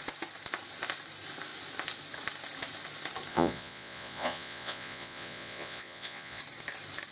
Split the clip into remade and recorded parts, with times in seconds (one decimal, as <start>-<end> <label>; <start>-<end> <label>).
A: 0.0-3.3 recorded; 3.3-6.4 remade; 6.4-7.1 recorded